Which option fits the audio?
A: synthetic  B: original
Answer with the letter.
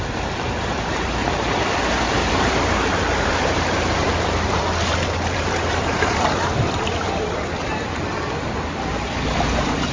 A